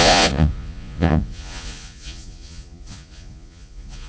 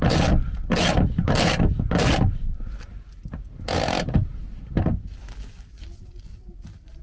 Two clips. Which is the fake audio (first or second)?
first